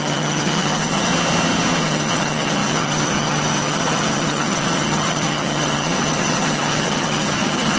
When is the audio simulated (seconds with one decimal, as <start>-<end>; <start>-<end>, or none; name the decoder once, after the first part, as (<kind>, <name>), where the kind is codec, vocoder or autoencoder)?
0.0-1.1 (vocoder, HiFi-GAN); 1.8-7.8